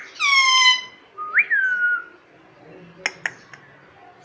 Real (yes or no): yes